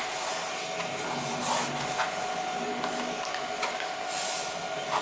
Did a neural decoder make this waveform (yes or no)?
no